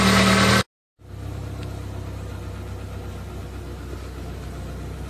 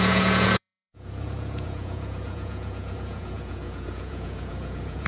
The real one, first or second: first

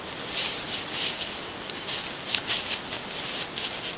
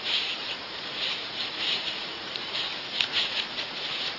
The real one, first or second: first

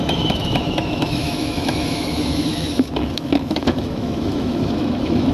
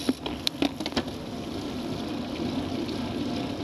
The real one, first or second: second